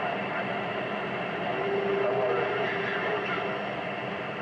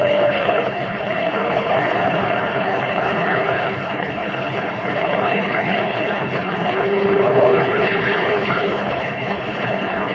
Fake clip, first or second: second